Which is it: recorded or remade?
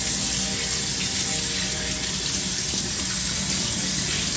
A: recorded